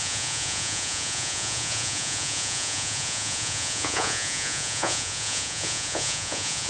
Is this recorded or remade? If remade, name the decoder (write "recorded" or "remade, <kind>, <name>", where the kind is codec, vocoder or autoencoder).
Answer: remade, vocoder, Vocos